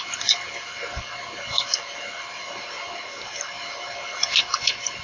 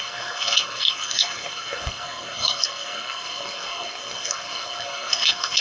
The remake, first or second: second